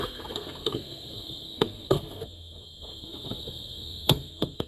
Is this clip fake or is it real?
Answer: fake